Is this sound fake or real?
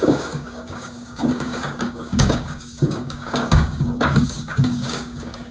fake